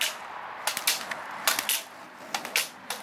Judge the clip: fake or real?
real